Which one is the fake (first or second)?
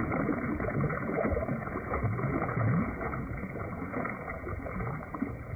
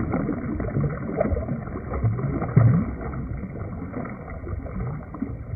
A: first